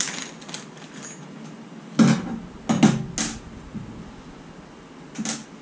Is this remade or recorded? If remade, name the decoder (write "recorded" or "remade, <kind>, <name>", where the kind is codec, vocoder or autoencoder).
recorded